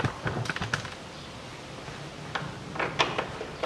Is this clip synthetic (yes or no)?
no